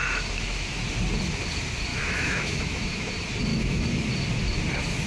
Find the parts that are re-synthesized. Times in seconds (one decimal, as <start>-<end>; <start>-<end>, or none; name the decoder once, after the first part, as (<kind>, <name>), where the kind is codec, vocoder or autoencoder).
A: 1.9-3.1 (autoencoder, DAC-VAE); 3.5-4.1